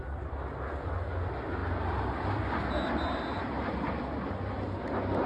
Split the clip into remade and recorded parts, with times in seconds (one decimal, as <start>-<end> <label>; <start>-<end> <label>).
0.0-1.6 recorded; 1.6-4.8 remade; 4.8-5.3 recorded